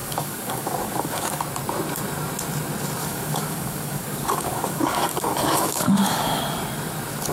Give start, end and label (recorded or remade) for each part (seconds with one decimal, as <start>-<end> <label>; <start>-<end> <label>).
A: 0.0-1.4 remade; 1.4-3.0 recorded; 3.0-6.4 remade; 6.4-7.3 recorded